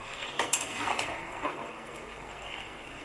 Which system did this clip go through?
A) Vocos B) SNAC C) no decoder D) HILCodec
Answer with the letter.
B